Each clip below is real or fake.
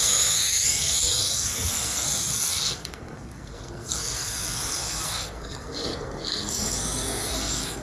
fake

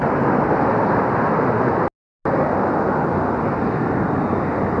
real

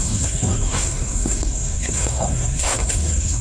fake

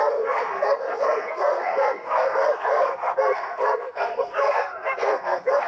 fake